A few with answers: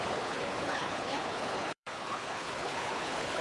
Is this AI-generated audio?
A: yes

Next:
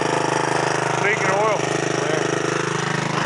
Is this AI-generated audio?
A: no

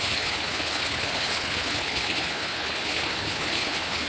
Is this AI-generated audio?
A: yes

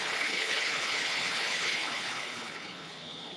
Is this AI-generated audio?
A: yes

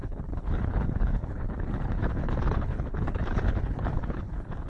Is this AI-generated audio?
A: yes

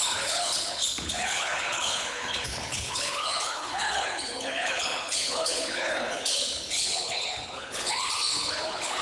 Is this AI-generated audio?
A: yes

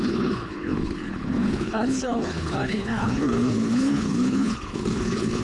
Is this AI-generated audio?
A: yes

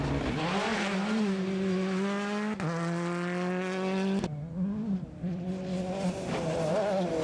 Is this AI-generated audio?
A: no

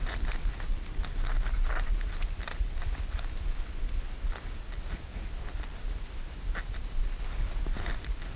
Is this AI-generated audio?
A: no